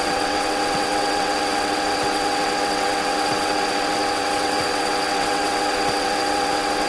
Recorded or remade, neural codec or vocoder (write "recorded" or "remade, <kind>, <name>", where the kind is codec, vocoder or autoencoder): remade, vocoder, WaveNeXt